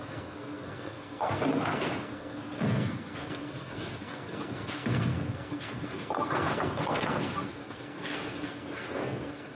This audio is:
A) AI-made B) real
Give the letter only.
A